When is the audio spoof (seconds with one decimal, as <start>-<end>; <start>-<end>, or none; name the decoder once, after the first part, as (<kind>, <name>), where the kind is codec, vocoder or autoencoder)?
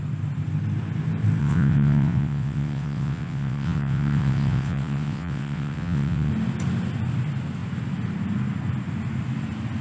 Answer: 1.4-6.3 (vocoder, WaveNeXt)